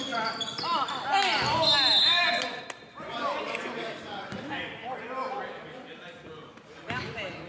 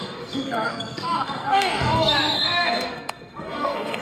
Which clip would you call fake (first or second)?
second